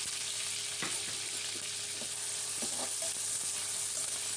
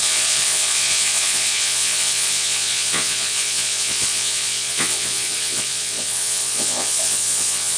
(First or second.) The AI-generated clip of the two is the second